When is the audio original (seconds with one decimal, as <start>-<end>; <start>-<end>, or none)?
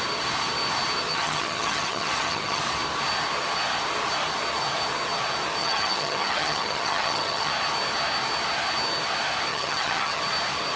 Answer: 0.0-1.1; 2.6-5.6; 7.5-9.5; 10.2-10.8